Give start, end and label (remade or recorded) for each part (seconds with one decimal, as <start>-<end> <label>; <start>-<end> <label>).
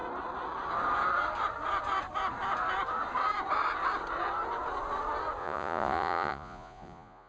0.0-5.4 recorded; 5.4-7.3 remade